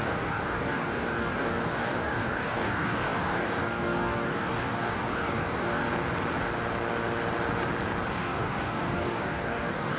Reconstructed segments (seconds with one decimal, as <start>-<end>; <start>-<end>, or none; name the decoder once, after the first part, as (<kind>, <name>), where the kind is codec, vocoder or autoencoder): 0.0-5.9 (codec, DAC); 8.1-10.0